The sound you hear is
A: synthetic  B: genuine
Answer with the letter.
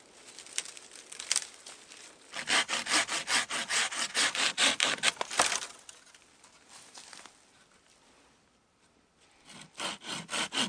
B